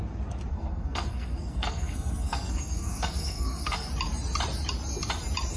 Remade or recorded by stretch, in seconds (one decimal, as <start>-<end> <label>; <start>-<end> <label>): 0.0-0.5 recorded; 0.5-3.9 remade; 3.9-5.6 recorded